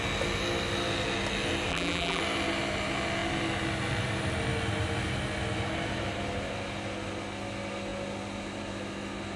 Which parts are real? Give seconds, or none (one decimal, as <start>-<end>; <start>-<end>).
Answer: 0.0-1.7; 2.2-9.4